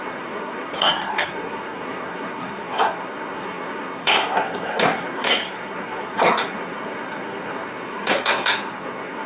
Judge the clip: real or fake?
fake